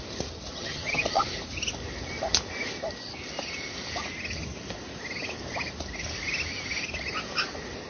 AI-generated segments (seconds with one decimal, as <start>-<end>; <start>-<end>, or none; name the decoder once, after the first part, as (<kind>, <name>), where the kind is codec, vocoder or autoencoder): 0.5-1.2 (vocoder, HiFi-GAN)

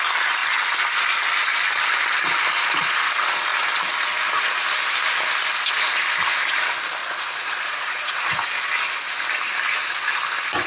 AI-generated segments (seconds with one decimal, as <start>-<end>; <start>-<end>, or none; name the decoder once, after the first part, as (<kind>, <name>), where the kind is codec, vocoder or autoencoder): 7.0-8.5 (vocoder, Vocos)

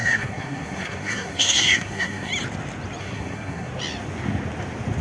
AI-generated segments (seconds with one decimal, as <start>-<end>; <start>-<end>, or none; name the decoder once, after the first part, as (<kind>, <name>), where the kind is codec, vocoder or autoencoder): 0.0-2.3 (codec, SNAC); 3.0-3.7

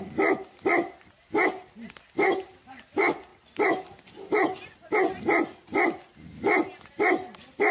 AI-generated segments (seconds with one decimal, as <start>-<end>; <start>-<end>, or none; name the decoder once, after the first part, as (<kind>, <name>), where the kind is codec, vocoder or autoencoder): none

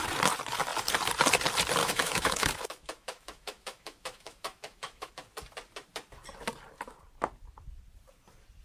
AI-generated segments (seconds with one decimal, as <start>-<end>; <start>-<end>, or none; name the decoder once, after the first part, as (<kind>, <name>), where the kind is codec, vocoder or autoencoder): 1.8-5.1 (autoencoder, DAC-VAE)

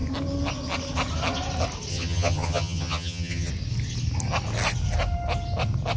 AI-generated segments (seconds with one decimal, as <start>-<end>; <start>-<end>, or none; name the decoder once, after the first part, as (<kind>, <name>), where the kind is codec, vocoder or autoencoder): 1.9-3.5 (vocoder, HiFi-GAN)

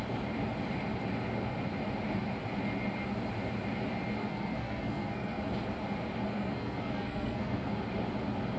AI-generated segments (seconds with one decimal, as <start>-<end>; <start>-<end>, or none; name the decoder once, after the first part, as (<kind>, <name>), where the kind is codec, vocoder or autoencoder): 4.2-5.4 (codec, SNAC); 6.3-7.7

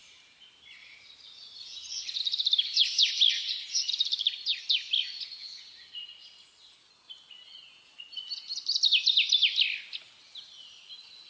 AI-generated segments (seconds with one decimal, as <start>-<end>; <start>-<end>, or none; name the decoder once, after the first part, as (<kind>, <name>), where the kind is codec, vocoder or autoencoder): 0.8-2.2 (vocoder, Vocos); 3.4-3.9